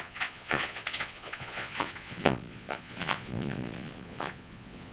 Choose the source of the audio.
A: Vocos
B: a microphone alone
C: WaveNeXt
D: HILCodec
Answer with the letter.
A